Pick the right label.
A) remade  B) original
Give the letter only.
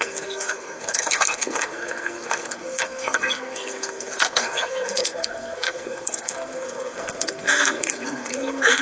A